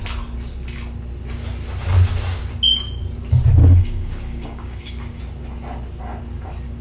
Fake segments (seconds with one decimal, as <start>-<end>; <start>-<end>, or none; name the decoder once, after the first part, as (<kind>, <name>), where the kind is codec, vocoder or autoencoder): 3.6-5.2 (codec, DAC)